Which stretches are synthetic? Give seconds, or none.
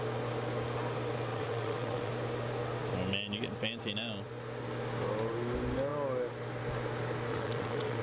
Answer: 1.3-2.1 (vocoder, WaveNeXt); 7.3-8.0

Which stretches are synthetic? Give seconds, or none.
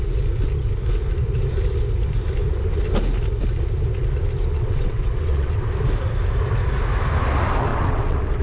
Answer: 4.5-5.6 (vocoder, WaveNeXt); 7.7-8.4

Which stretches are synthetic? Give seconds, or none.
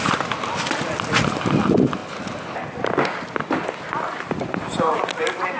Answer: none